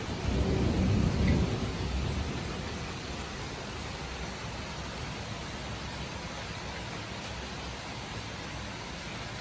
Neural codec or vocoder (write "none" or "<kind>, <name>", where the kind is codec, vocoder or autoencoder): none